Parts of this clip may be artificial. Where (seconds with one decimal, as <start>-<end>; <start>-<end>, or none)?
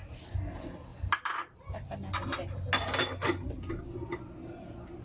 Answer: none